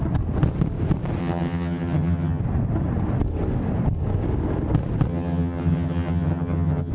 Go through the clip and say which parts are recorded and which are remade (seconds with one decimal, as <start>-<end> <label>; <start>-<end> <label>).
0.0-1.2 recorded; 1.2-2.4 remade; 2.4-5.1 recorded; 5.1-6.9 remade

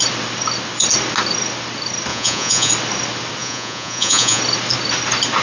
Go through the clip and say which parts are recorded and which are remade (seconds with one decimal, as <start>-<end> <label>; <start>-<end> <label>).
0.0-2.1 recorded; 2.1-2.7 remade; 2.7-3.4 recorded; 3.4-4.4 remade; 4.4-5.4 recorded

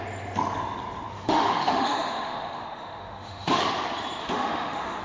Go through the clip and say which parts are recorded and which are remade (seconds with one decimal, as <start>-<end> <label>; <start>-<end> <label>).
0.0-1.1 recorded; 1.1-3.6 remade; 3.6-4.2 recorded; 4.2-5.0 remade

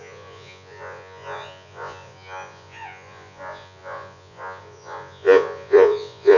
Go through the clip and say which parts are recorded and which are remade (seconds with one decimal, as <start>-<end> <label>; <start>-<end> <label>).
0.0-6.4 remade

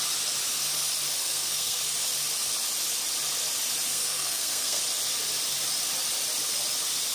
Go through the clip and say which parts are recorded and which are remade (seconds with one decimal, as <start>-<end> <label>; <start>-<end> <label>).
0.0-1.2 recorded; 1.2-1.8 remade; 1.8-3.9 recorded; 3.9-4.8 remade; 4.8-7.1 recorded

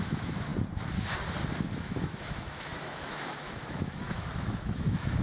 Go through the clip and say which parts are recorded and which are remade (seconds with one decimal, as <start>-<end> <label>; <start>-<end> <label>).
0.0-0.5 remade; 0.5-1.6 recorded; 1.6-5.2 remade

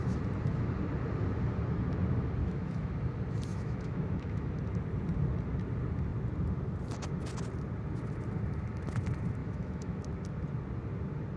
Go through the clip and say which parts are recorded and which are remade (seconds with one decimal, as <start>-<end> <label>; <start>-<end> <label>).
0.0-2.4 recorded; 2.4-2.9 remade; 2.9-3.5 recorded; 3.5-4.5 remade; 4.5-9.4 recorded; 9.4-10.0 remade; 10.0-11.4 recorded